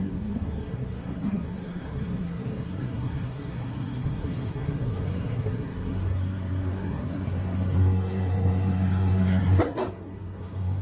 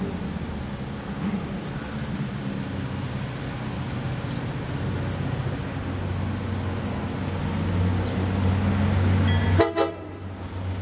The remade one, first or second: first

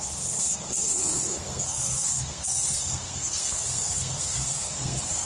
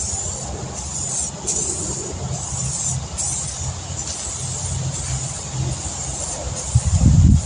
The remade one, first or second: first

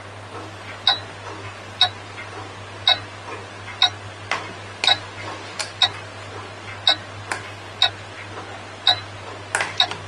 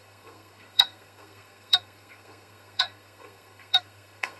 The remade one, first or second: second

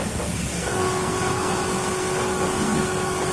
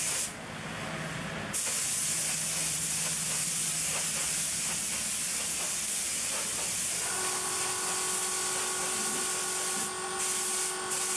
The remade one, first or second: first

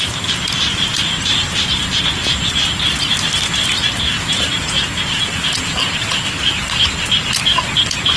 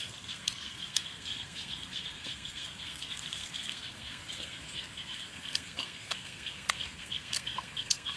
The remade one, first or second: second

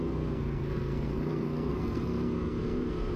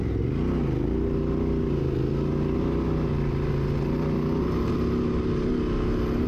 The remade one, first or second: first